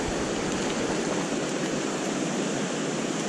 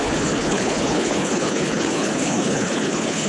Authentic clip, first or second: first